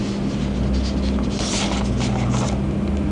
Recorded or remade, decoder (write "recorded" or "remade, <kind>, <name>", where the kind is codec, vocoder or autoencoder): recorded